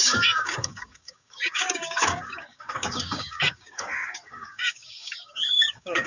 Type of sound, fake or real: fake